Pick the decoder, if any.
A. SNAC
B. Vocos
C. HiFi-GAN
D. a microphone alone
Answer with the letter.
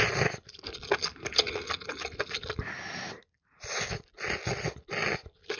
D